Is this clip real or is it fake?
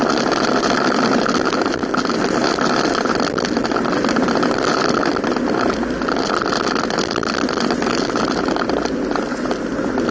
real